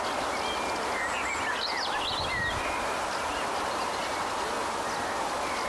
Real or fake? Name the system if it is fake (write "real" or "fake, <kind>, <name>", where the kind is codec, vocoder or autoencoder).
real